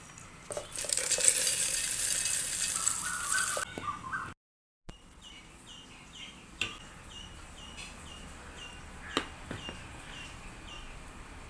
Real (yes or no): yes